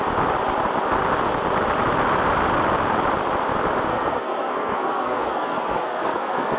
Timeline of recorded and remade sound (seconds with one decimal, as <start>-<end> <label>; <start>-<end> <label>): 0.0-3.9 recorded; 3.9-6.6 remade